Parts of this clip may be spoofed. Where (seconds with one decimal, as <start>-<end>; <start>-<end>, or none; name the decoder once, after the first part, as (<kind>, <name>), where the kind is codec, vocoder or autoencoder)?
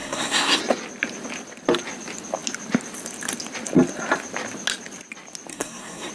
0.0-0.6 (codec, SNAC); 5.5-6.1